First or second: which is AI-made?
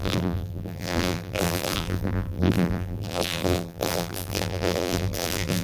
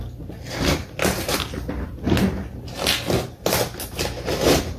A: first